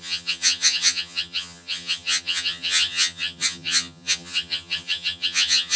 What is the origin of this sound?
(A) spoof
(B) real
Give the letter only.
A